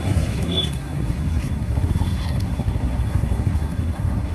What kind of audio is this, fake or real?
fake